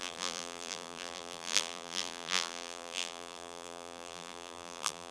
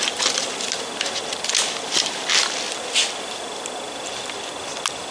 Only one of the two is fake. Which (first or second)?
first